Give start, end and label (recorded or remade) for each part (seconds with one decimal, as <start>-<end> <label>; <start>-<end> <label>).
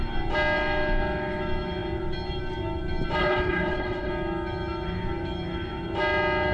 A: 0.0-3.2 recorded; 3.2-4.1 remade; 4.1-6.5 recorded